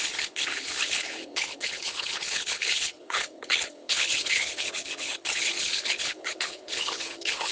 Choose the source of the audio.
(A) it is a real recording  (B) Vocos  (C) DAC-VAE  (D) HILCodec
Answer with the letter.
D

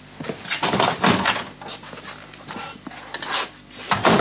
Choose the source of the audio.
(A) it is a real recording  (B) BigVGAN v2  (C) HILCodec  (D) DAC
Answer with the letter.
A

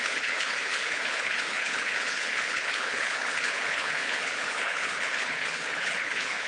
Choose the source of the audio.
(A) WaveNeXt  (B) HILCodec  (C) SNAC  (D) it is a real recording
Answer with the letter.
B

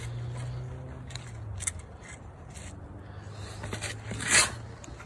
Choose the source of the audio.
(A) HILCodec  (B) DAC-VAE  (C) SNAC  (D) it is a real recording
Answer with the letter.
D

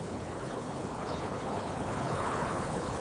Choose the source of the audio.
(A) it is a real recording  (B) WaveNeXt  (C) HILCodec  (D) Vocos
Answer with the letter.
C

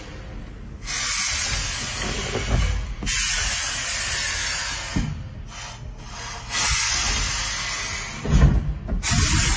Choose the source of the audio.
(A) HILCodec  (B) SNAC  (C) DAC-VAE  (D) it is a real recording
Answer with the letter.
D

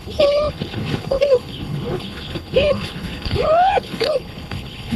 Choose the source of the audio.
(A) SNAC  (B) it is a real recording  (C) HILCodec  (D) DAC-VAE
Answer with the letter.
C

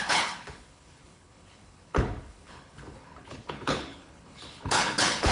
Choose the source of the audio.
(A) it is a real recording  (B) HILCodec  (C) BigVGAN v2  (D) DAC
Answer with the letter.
B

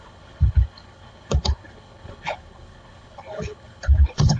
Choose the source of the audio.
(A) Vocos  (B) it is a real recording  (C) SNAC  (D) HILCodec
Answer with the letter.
D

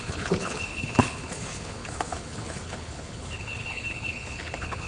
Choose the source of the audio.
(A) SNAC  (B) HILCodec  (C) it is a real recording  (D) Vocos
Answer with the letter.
B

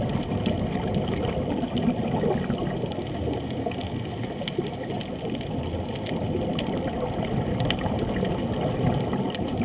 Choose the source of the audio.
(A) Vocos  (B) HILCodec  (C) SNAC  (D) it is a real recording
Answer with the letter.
D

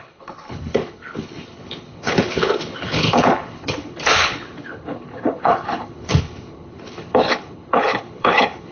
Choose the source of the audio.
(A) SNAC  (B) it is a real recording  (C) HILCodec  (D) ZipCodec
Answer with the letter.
C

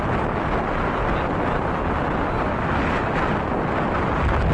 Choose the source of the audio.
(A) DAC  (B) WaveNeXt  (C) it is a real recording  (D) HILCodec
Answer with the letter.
C